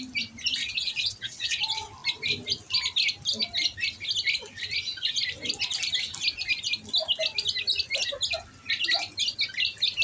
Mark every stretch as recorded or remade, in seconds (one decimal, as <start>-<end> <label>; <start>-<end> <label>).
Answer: 0.0-0.6 recorded; 0.6-1.6 remade; 1.6-10.0 recorded